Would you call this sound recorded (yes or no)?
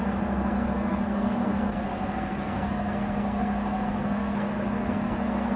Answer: no